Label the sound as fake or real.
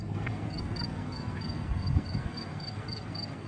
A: fake